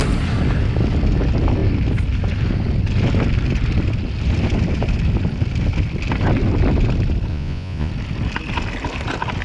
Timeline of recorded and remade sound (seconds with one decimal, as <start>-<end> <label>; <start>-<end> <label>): 0.0-7.3 recorded; 7.3-7.9 remade; 7.9-9.4 recorded